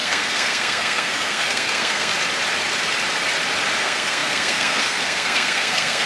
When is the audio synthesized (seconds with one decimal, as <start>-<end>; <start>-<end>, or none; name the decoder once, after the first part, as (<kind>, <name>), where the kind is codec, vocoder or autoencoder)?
0.0-2.1 (codec, SNAC); 3.8-6.1